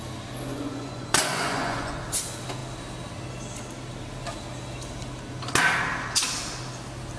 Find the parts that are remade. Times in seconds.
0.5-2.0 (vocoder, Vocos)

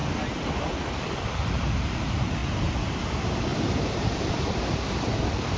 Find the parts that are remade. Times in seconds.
1.3-2.4 (vocoder, BigVGAN v2); 3.1-5.6

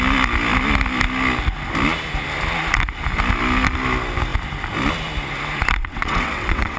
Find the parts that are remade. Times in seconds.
5.8-6.8 (vocoder, WaveNeXt)

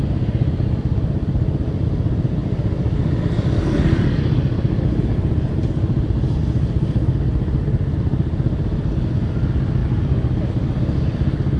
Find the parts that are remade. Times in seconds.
2.4-5.7 (vocoder, BigVGAN v2); 7.3-9.0

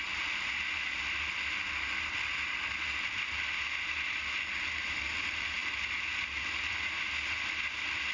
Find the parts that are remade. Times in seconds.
none